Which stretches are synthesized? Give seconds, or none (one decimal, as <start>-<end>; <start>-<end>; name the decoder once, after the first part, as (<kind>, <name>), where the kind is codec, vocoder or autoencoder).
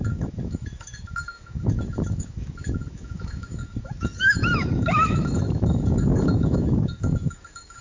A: 0.0-7.8 (autoencoder, DAC-VAE)